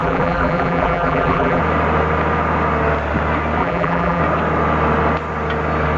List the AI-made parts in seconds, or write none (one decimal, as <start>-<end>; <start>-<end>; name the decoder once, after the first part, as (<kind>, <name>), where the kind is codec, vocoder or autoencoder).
0.0-1.6 (vocoder, BigVGAN v2); 3.6-4.2